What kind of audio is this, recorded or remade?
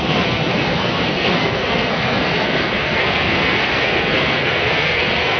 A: remade